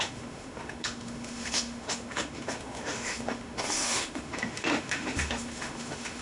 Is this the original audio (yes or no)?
no